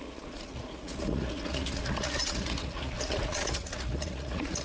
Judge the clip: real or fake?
fake